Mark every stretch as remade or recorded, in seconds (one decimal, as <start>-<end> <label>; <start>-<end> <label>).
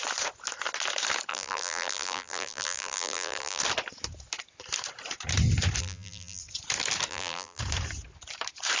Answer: 0.0-1.3 recorded; 1.3-3.6 remade; 3.6-5.8 recorded; 5.8-6.4 remade; 6.4-7.1 recorded; 7.1-7.6 remade; 7.6-8.8 recorded